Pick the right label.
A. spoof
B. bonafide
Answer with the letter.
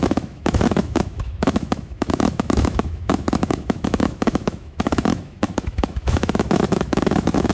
A